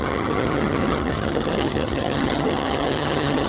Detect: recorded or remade remade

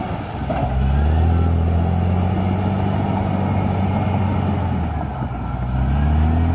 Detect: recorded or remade recorded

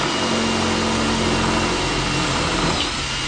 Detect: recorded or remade recorded